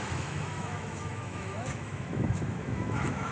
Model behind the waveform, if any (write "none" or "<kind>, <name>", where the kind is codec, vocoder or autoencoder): autoencoder, DAC-VAE